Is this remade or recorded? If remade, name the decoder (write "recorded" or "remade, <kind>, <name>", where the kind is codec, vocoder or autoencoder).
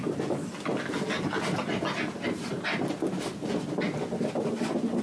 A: recorded